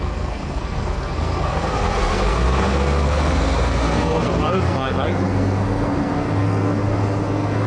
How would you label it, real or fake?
fake